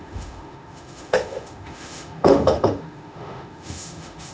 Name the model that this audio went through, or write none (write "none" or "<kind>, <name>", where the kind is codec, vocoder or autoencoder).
autoencoder, DAC-VAE